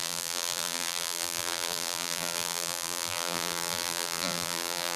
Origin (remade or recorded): remade